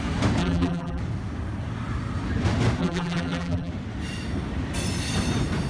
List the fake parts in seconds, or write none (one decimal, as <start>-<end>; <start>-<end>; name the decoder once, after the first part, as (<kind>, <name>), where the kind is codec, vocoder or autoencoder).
0.4-1.0 (vocoder, BigVGAN v2); 2.8-3.7